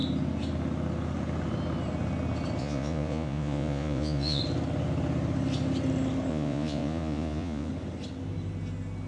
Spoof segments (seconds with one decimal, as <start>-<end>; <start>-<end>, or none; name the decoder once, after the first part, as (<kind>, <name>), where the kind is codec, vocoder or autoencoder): 2.6-4.4 (vocoder, Vocos); 6.3-7.7